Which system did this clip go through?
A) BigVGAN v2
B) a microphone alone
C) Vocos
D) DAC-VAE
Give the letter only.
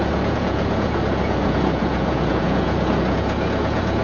C